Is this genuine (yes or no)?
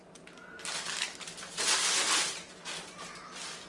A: yes